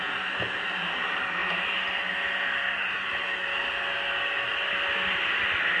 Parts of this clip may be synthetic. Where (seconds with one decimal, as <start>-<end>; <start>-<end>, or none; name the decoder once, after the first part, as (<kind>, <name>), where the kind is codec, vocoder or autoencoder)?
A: none